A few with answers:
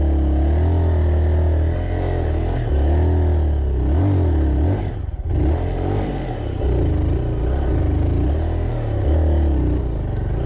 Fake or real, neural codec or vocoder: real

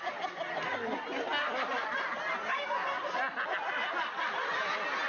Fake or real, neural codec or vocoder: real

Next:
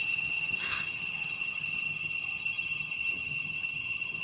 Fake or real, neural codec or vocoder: fake, vocoder, HiFi-GAN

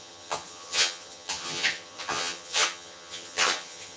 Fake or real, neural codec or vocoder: fake, vocoder, HiFi-GAN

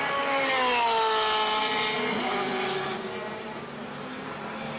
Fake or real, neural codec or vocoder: real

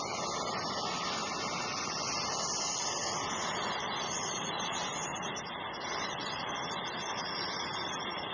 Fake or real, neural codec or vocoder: real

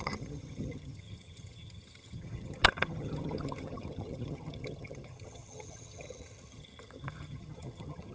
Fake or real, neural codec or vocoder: fake, vocoder, HiFi-GAN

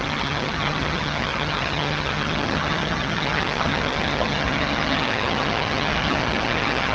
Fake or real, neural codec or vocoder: fake, vocoder, HiFi-GAN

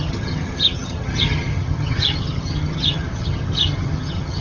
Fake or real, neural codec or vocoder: fake, vocoder, HiFi-GAN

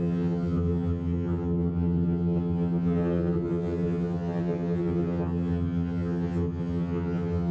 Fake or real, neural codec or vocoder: fake, vocoder, HiFi-GAN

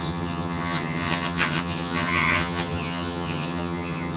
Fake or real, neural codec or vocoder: fake, vocoder, HiFi-GAN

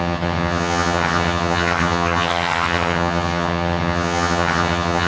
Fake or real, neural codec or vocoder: fake, vocoder, HiFi-GAN